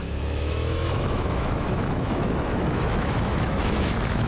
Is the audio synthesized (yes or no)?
yes